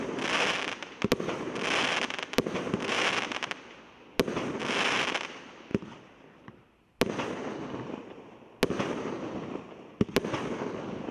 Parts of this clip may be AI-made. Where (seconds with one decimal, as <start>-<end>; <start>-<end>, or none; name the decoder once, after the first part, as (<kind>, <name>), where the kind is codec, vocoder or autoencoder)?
none